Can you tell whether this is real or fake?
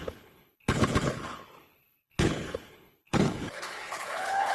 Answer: fake